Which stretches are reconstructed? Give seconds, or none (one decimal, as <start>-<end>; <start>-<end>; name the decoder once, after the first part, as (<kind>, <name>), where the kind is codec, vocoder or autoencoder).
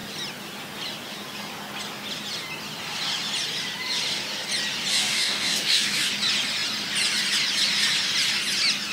4.9-6.1 (codec, DAC)